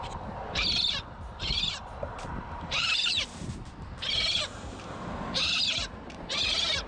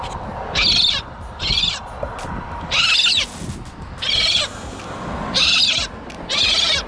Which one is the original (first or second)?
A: second